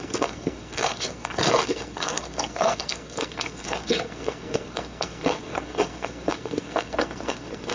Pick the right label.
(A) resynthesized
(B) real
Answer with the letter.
A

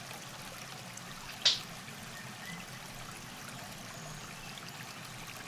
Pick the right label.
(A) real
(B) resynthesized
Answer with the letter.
A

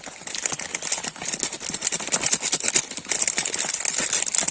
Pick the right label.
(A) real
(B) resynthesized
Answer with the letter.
A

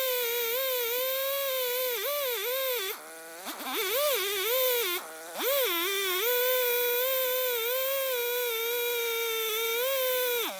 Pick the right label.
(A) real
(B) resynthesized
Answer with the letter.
A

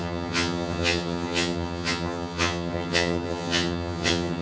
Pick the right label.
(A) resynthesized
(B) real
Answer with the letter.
A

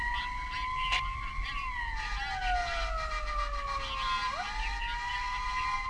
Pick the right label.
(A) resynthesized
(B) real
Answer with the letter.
B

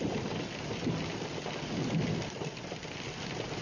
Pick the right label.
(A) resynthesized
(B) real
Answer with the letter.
B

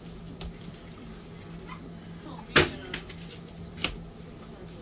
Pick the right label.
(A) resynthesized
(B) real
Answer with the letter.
B